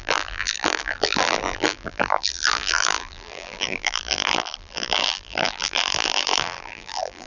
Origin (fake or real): fake